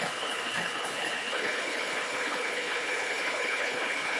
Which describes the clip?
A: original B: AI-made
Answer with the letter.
B